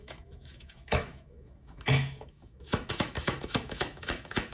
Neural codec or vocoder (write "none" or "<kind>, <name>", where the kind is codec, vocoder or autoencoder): autoencoder, DAC-VAE